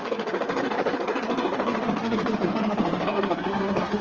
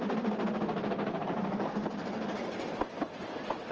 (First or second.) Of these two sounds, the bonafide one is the second